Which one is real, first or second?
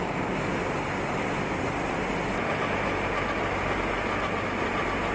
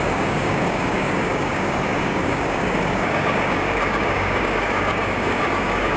first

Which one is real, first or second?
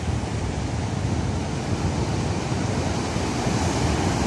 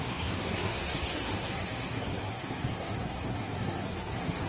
first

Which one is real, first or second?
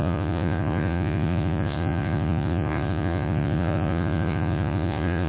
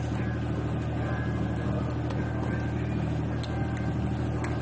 second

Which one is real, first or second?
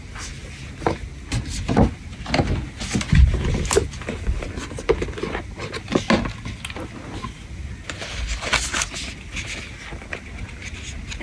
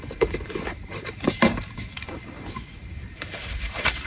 first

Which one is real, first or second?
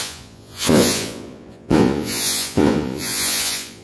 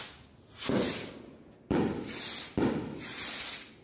second